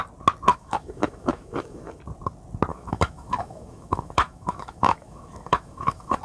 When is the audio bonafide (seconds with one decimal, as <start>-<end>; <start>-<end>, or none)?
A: 0.0-0.5; 2.0-2.7